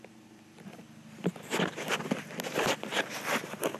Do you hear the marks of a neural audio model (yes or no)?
no